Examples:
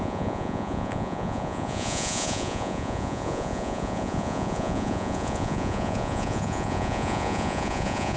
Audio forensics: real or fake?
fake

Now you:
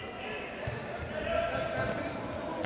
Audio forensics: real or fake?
real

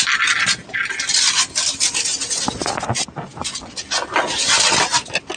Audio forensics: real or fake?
real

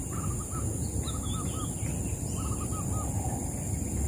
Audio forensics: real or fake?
real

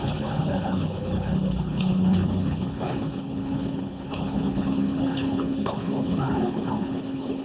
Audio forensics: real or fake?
fake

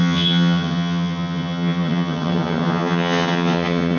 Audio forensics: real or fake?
fake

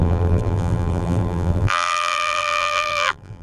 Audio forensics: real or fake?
fake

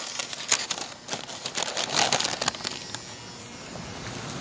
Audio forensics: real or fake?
real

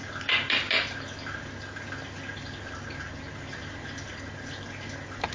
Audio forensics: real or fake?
real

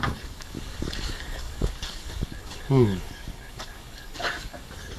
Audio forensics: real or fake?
fake